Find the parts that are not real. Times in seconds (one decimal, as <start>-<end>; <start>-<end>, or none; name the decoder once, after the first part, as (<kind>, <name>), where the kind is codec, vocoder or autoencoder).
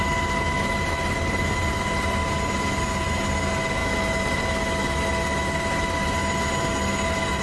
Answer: none